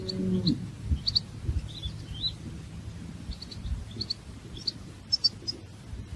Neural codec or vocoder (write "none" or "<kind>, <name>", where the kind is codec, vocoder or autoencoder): none